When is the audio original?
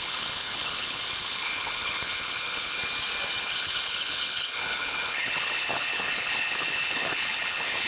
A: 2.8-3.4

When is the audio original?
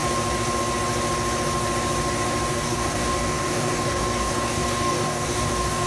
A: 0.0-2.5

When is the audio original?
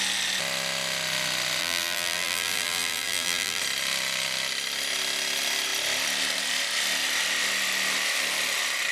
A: 0.0-1.6; 3.6-8.9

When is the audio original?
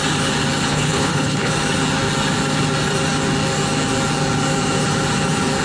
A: 0.0-0.7; 1.5-5.6